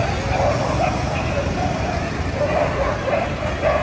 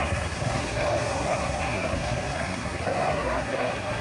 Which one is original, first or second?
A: first